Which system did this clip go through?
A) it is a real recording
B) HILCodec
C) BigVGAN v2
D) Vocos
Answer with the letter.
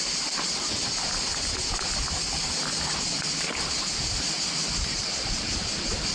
A